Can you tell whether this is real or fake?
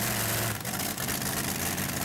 real